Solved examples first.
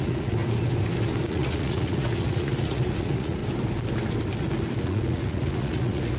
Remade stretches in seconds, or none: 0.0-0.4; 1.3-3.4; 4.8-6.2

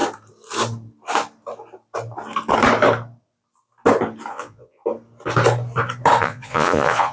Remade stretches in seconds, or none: 4.3-4.8; 6.2-7.1

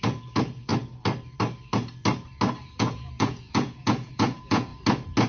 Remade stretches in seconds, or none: 0.0-0.7; 2.6-4.7

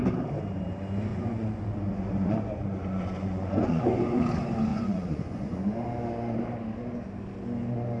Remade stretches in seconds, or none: 1.1-4.2; 4.7-5.6

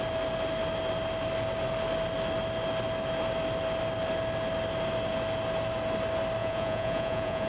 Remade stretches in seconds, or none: 6.4-7.5

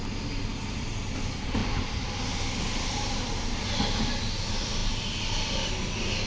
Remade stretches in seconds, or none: none

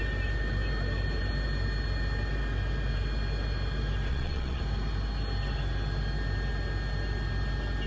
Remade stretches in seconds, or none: 4.1-4.6

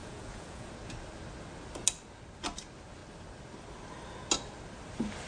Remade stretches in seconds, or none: 0.0-0.7